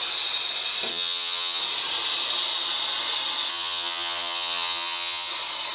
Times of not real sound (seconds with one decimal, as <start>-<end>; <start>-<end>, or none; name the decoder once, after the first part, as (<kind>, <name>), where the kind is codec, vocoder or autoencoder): 0.9-1.6 (vocoder, HiFi-GAN); 3.5-5.3

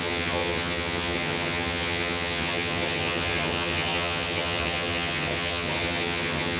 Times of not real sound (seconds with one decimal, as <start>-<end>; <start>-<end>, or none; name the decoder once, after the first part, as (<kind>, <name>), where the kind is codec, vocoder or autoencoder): 0.0-6.6 (vocoder, HiFi-GAN)

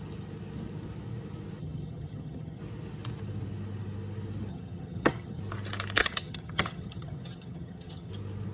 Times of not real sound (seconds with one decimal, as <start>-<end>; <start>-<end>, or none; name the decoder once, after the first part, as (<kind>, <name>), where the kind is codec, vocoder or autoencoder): 1.6-2.6 (vocoder, HiFi-GAN); 4.5-5.4; 6.0-8.1